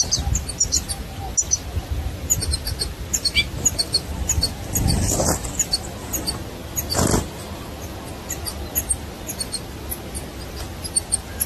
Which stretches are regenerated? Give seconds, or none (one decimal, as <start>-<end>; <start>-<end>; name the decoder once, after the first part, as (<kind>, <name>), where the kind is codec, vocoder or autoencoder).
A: 6.6-7.7 (vocoder, BigVGAN v2)

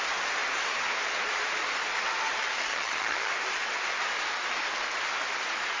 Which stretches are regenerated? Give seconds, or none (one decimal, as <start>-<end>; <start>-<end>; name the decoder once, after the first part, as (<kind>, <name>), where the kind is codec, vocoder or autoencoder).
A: 2.7-3.3 (vocoder, HiFi-GAN)

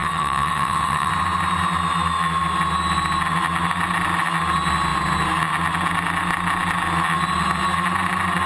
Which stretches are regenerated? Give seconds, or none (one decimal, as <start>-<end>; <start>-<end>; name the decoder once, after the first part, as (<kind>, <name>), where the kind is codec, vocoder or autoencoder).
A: 0.0-1.1 (vocoder, WaveNeXt)

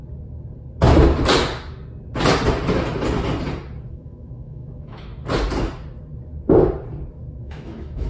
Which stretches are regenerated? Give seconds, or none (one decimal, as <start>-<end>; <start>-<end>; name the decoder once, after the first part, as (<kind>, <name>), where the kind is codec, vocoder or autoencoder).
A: 3.9-5.1 (autoencoder, DAC-VAE); 7.4-8.1